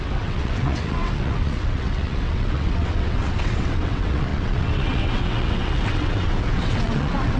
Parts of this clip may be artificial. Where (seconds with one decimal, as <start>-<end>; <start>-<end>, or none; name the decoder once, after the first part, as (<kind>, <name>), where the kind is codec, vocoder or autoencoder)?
0.0-7.4 (vocoder, WaveNeXt)